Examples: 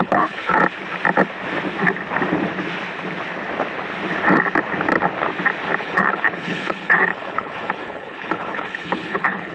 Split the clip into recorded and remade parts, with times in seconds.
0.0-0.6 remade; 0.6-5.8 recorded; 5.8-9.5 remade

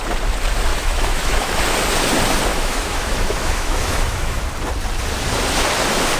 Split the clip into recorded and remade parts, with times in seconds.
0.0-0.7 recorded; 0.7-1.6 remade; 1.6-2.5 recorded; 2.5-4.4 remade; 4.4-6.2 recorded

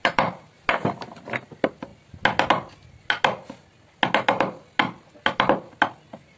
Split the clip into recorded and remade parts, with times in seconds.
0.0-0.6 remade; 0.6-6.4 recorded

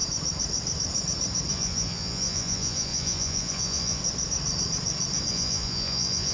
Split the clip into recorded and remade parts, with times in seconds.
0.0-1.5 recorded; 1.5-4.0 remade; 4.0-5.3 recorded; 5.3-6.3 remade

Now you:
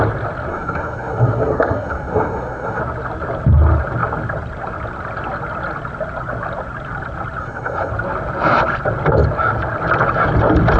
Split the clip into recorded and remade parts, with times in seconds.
0.0-0.5 recorded; 0.5-2.8 remade; 2.8-7.4 recorded; 7.4-7.9 remade; 7.9-10.8 recorded